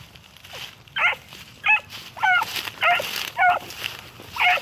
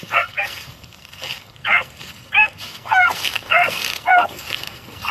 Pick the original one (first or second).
first